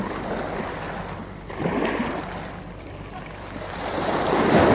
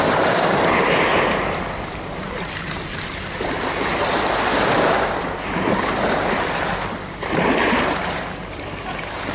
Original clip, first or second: first